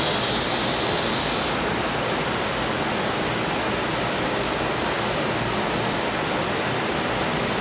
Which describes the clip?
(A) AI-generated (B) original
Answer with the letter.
B